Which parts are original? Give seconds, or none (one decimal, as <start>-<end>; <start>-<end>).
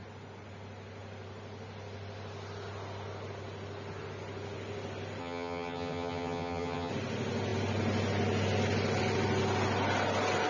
0.0-5.2; 6.9-10.5